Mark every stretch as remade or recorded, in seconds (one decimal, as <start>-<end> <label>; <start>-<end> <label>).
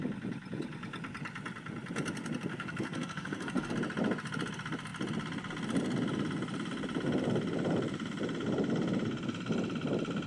0.0-2.5 recorded; 2.5-3.7 remade; 3.7-10.3 recorded